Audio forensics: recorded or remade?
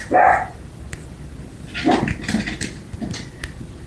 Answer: recorded